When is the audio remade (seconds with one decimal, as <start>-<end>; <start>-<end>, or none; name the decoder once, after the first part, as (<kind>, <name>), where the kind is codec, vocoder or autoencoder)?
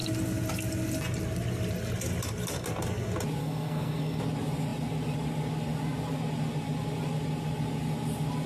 3.4-4.2 (codec, SNAC)